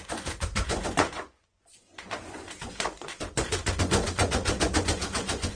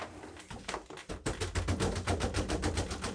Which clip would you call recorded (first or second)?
second